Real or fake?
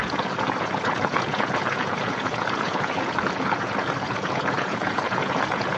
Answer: fake